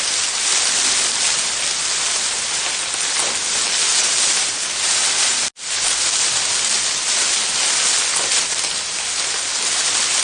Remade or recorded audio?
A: recorded